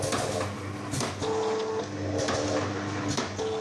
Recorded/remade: recorded